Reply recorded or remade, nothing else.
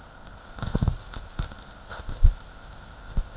remade